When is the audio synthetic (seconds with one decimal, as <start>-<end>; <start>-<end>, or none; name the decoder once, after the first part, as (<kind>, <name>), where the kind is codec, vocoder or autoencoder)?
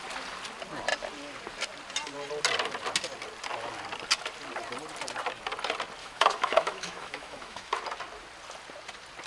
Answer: 6.0-7.8 (autoencoder, DAC-VAE)